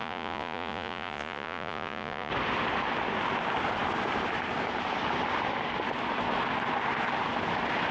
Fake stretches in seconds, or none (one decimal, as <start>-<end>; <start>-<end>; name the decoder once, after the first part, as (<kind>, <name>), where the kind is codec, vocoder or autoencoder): 0.0-2.3 (vocoder, Vocos)